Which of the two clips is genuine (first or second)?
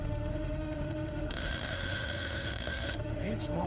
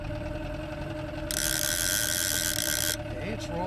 second